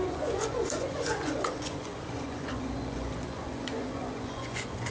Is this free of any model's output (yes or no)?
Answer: no